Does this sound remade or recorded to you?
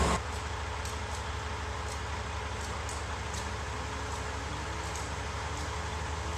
recorded